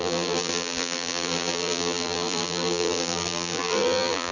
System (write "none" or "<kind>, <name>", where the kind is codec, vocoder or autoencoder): vocoder, BigVGAN v2